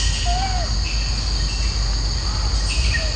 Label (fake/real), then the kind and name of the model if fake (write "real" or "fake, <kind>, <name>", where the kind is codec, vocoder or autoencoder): real